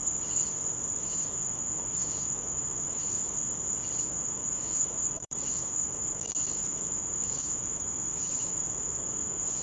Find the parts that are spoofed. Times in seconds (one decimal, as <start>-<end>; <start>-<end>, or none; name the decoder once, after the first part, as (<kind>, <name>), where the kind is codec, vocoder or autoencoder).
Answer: 0.9-3.5 (autoencoder, DAC-VAE); 4.0-9.6